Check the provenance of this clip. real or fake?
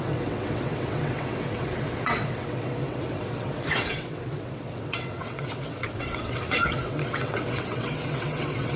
fake